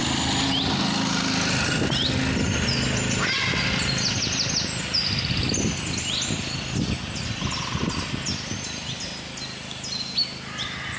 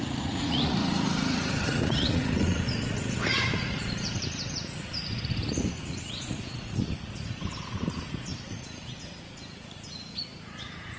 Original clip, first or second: first